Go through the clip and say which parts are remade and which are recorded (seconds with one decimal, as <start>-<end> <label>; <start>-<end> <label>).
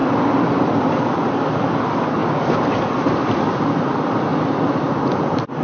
0.0-2.2 remade; 2.2-3.5 recorded; 3.5-4.3 remade; 4.3-5.0 recorded; 5.0-5.6 remade